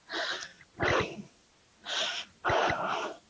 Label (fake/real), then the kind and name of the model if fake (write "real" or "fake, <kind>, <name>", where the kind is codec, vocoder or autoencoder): real